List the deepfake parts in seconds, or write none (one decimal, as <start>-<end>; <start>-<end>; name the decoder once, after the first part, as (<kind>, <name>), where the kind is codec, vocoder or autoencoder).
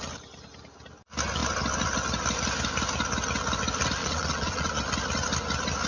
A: 4.0-4.8 (vocoder, Vocos)